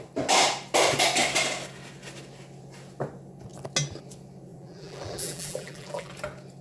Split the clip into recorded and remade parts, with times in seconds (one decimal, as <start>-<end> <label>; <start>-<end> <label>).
0.0-4.5 recorded; 4.5-6.1 remade; 6.1-6.6 recorded